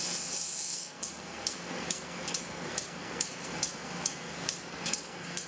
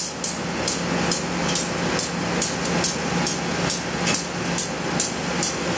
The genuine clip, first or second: second